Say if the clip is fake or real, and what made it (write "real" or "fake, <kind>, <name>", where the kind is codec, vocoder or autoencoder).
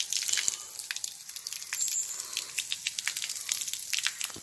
real